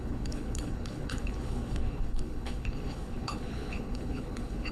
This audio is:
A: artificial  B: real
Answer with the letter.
A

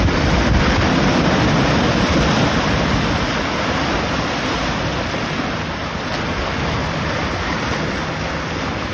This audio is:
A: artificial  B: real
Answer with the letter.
B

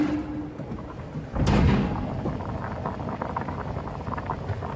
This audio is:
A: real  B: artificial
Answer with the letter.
A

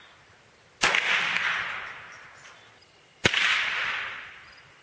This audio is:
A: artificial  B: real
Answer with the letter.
B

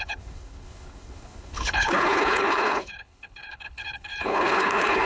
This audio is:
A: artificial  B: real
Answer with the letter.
A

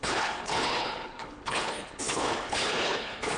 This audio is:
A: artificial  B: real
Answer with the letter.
A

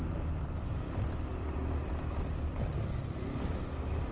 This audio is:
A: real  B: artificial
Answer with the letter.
A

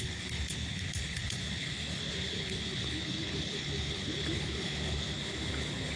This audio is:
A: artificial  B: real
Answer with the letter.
A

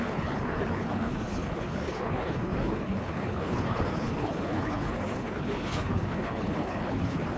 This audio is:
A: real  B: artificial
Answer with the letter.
B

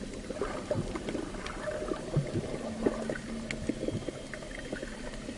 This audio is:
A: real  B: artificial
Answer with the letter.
A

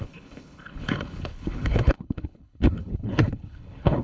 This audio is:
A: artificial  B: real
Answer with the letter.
A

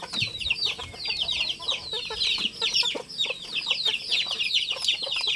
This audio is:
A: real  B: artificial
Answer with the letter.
A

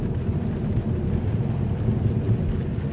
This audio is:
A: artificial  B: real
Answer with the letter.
B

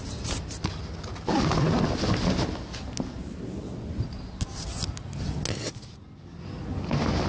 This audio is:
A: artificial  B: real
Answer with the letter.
B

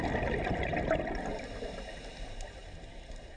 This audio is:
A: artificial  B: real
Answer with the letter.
B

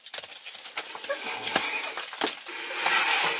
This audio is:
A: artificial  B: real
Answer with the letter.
B